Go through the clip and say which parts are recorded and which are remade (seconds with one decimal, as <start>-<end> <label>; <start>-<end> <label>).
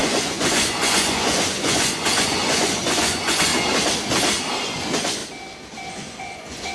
0.0-3.5 remade; 3.5-4.6 recorded; 4.6-5.2 remade; 5.2-5.9 recorded; 5.9-6.7 remade